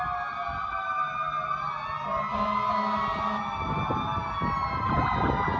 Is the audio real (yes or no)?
yes